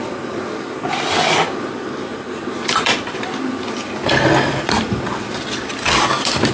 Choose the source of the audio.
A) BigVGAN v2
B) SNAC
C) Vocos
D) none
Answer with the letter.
A